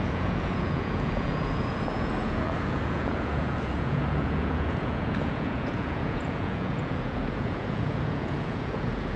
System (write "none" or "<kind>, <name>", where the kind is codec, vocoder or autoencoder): vocoder, Vocos